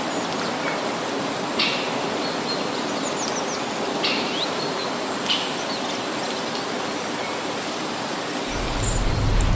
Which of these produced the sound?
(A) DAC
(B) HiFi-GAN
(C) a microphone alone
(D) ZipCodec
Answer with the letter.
C